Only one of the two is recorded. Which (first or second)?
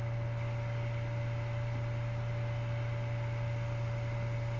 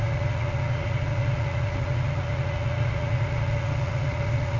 first